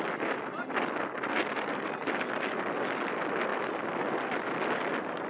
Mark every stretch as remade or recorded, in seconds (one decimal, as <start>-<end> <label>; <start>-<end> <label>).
0.0-5.3 recorded